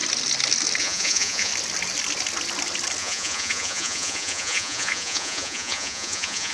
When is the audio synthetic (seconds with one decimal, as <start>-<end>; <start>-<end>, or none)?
0.8-1.5; 3.0-6.5